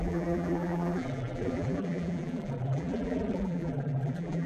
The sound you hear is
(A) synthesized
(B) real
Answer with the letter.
A